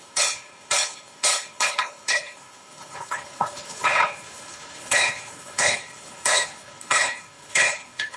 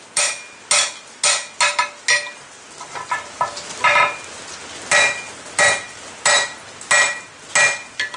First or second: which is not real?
first